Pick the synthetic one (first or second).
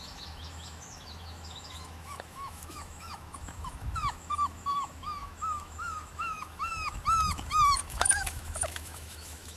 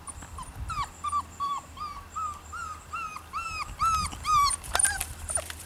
first